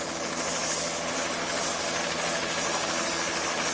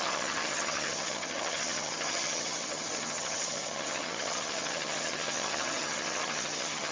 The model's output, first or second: second